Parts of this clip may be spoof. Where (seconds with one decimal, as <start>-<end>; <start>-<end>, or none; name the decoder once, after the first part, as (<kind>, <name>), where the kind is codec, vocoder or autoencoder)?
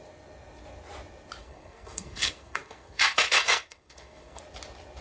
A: 1.4-4.4 (codec, SNAC)